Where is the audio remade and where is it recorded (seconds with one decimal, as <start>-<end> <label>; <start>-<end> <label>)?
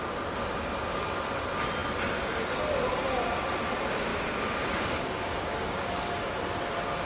0.0-4.1 recorded; 4.1-6.1 remade; 6.1-7.1 recorded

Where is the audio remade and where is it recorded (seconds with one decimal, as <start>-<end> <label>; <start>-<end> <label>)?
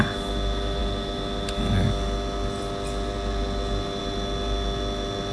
0.0-5.3 recorded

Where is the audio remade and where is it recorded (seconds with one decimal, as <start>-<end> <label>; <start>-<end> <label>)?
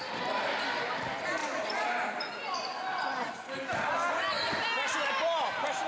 0.0-5.9 recorded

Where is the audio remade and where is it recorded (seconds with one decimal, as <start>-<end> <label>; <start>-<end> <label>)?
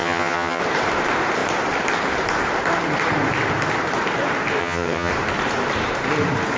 0.0-0.6 remade; 0.6-4.6 recorded; 4.6-5.1 remade; 5.1-6.6 recorded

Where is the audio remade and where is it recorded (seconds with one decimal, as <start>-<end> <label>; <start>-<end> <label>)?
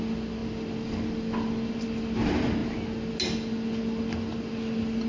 0.0-5.1 recorded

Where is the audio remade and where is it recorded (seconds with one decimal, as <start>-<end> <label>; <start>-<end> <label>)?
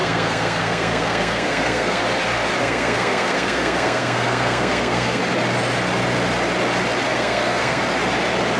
0.0-2.0 remade; 2.0-2.6 recorded; 2.6-5.2 remade; 5.2-7.1 recorded; 7.1-7.8 remade; 7.8-8.6 recorded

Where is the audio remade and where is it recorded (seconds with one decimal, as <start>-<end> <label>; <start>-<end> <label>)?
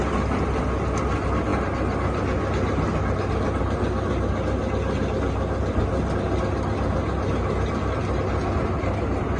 0.0-9.4 recorded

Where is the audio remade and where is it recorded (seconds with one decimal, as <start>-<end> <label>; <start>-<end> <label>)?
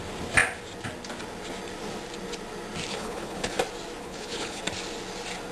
0.0-2.9 recorded; 2.9-3.6 remade; 3.6-4.0 recorded; 4.0-4.6 remade; 4.6-5.5 recorded